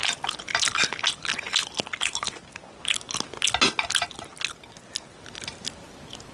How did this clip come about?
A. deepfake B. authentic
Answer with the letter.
B